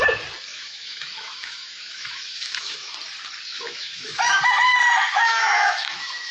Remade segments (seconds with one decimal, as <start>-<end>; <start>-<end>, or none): 0.5-2.9; 3.5-4.4; 5.2-6.3